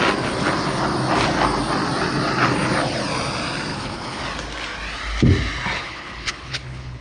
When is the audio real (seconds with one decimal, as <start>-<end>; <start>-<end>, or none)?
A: 0.0-3.7; 4.2-5.8